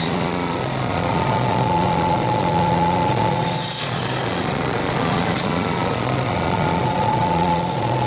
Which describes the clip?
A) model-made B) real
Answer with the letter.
A